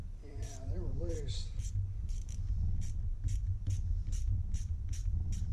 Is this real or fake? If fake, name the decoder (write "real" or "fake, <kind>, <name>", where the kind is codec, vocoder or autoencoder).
fake, vocoder, BigVGAN v2